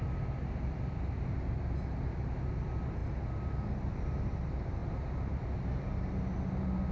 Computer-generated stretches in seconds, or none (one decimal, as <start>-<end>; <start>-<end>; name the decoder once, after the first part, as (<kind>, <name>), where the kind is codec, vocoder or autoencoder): none